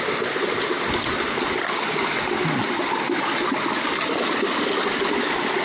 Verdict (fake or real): real